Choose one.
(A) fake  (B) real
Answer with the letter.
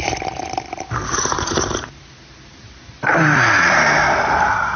A